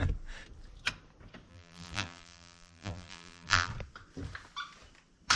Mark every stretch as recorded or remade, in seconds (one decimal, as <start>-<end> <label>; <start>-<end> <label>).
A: 0.0-1.5 recorded; 1.5-3.7 remade; 3.7-5.4 recorded

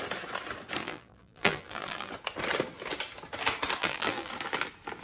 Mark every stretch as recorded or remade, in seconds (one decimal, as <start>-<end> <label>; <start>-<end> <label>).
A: 0.0-0.8 recorded; 0.8-2.1 remade; 2.1-3.8 recorded; 3.8-4.3 remade; 4.3-5.0 recorded

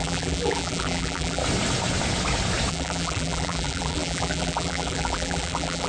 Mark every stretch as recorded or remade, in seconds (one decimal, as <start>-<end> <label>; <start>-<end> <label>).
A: 0.0-1.4 remade; 1.4-2.7 recorded; 2.7-5.9 remade